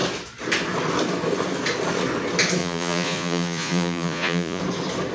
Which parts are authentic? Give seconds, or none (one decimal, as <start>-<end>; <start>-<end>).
0.0-2.6; 4.6-5.1